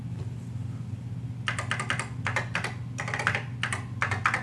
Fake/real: real